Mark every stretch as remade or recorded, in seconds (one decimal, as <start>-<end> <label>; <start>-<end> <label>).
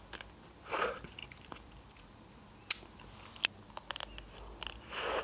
0.0-1.2 recorded; 1.2-2.5 remade; 2.5-5.2 recorded